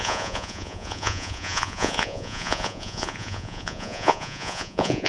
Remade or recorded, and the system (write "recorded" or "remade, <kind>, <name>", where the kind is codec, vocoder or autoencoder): remade, vocoder, Vocos